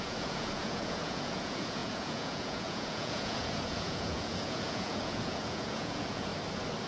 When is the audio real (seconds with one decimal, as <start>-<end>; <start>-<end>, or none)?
6.3-6.9